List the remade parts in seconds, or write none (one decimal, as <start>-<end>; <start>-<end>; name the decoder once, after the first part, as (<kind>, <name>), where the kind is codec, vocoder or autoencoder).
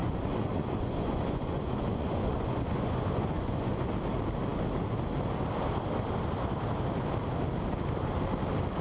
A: 0.0-3.9 (vocoder, Vocos)